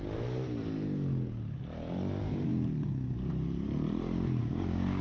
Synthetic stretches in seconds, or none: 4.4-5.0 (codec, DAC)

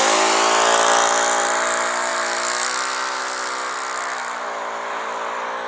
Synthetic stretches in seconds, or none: none

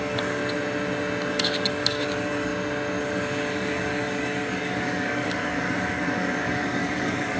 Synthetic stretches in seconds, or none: 0.0-0.4 (codec, DAC); 1.3-2.5; 3.0-7.4

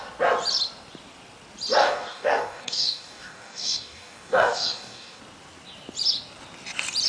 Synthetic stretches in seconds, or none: 1.8-5.2 (codec, DAC)